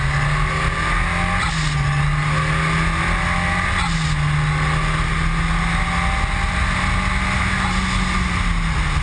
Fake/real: real